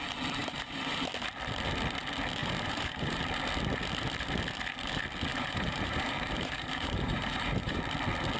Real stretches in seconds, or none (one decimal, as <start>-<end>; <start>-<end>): 0.0-0.4; 1.0-2.4; 3.2-5.3; 7.8-8.4